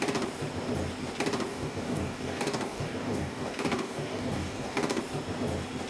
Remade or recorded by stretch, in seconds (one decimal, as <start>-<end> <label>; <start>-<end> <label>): 0.0-1.5 recorded; 1.5-5.0 remade; 5.0-5.9 recorded